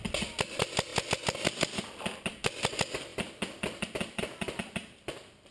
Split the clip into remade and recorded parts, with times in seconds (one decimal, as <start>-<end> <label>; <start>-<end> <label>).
0.0-5.5 recorded